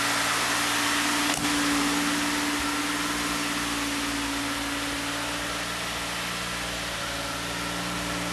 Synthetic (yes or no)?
no